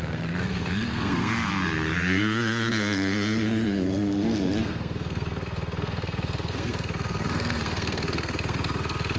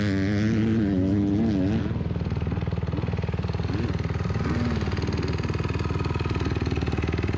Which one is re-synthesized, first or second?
first